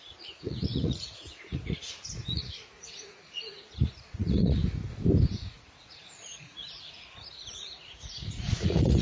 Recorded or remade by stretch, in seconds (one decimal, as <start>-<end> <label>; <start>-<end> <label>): 0.0-4.6 remade; 4.6-5.3 recorded; 5.3-9.0 remade